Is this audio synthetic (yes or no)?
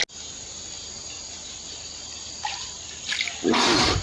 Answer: no